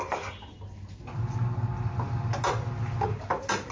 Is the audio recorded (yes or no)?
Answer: yes